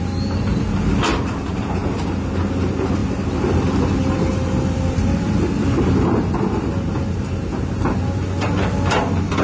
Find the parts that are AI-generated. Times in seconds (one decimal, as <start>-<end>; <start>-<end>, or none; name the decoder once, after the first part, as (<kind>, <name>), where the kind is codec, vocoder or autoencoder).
3.0-6.7 (vocoder, BigVGAN v2)